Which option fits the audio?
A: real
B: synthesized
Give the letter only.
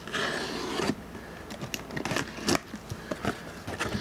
A